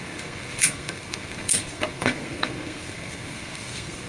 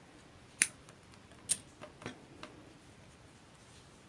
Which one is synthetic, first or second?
first